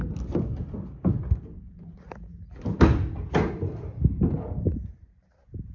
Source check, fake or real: real